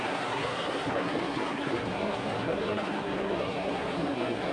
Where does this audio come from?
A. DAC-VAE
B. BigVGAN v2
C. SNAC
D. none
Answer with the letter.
C